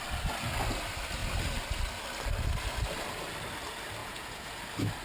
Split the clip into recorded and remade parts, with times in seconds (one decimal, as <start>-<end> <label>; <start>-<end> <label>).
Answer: 0.0-4.0 recorded; 4.0-4.5 remade; 4.5-5.0 recorded